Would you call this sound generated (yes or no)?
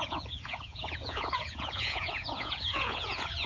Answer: yes